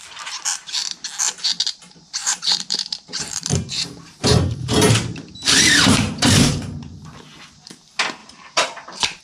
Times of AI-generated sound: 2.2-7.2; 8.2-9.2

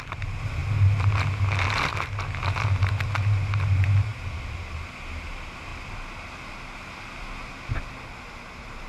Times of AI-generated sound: none

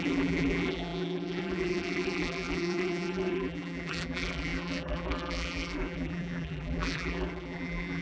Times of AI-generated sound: 0.0-8.0

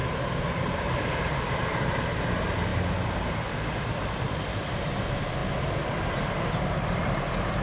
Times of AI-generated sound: 1.2-2.7; 3.9-7.6

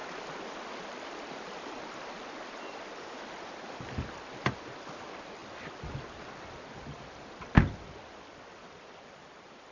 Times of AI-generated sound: none